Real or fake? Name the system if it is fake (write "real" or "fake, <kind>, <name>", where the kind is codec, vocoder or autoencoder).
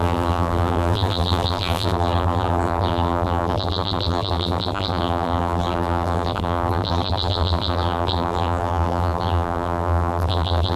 fake, vocoder, BigVGAN v2